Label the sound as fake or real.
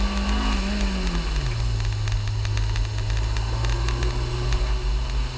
real